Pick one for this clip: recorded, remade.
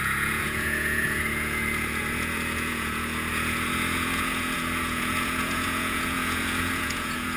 remade